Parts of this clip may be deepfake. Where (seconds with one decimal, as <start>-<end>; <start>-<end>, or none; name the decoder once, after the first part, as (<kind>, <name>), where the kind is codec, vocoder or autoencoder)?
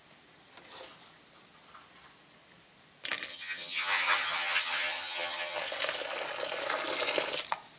3.3-5.6 (vocoder, HiFi-GAN)